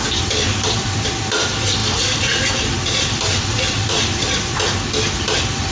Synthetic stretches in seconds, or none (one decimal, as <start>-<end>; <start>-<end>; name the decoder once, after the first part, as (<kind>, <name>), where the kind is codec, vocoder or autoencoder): 0.0-4.5 (vocoder, BigVGAN v2); 5.2-5.7